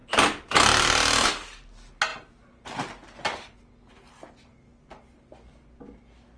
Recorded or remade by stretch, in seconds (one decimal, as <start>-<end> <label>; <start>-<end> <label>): 0.0-6.4 recorded